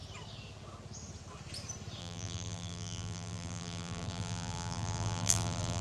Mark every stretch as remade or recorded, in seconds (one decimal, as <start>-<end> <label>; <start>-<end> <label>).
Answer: 0.0-2.0 recorded; 2.0-5.8 remade